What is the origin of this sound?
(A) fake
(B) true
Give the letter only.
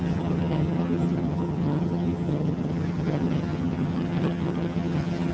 A